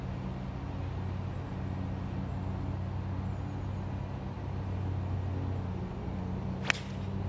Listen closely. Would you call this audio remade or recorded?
recorded